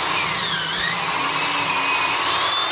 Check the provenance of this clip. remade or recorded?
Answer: recorded